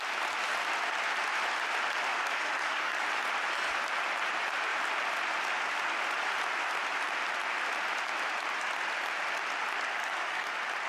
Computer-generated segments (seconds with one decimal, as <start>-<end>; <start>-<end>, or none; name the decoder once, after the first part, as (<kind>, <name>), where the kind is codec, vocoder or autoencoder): 2.1-3.0 (codec, DAC); 10.0-10.5